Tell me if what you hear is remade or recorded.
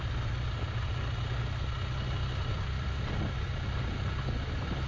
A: recorded